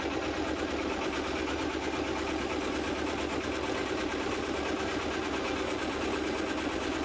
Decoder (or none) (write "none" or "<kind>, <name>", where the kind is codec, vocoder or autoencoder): none